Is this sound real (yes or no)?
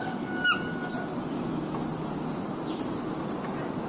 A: yes